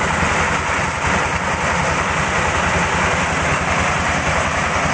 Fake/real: real